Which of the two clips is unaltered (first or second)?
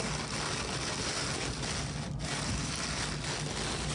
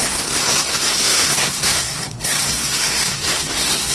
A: first